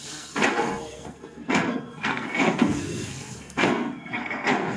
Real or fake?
fake